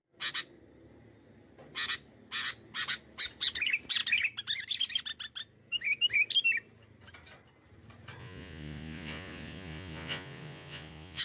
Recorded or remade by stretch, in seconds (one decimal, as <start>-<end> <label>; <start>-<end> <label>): 0.0-8.2 recorded; 8.2-11.2 remade